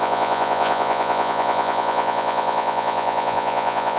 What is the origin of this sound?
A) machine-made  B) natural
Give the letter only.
A